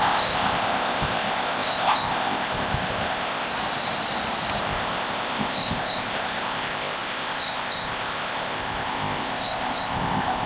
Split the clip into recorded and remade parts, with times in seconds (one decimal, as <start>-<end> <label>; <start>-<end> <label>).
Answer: 0.0-3.5 remade; 3.5-4.6 recorded; 4.6-10.5 remade